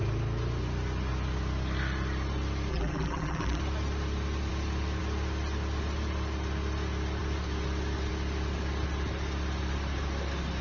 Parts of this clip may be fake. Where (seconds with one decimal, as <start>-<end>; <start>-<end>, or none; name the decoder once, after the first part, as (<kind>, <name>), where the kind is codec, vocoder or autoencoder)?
2.7-3.6 (vocoder, BigVGAN v2)